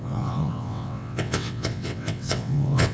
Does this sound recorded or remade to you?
remade